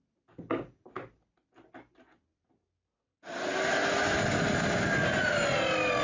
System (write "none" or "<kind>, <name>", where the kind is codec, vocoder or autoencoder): none